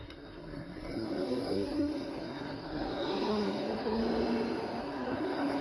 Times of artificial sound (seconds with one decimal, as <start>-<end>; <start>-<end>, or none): 0.0-4.0; 4.8-5.6